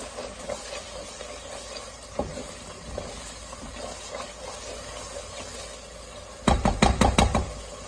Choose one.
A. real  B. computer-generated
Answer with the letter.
A